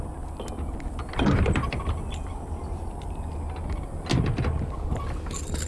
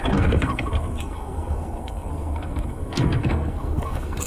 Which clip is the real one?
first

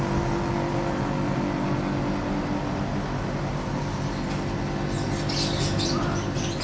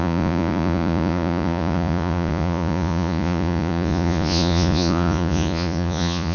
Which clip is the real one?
first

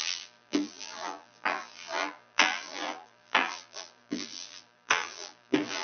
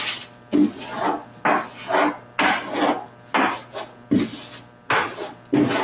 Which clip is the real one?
second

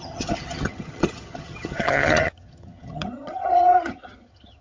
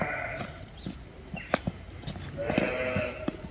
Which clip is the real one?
second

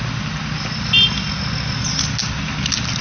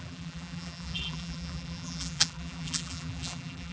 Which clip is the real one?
first